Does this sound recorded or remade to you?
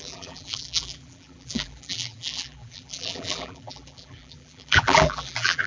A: remade